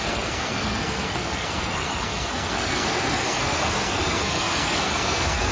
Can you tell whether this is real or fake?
fake